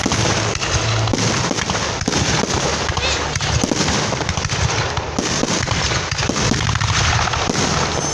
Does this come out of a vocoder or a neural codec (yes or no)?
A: no